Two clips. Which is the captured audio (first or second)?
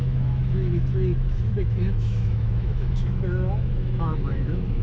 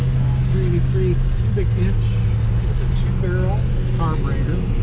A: second